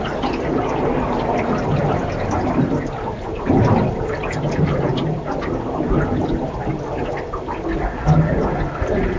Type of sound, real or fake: real